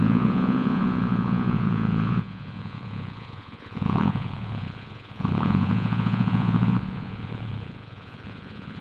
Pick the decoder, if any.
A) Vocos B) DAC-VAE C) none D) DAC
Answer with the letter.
A